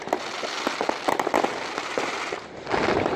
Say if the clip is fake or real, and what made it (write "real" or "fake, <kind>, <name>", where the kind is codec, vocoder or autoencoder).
real